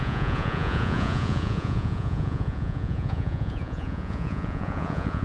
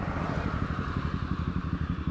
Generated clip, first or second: first